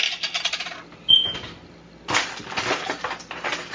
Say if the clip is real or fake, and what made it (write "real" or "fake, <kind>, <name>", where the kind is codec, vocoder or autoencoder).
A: real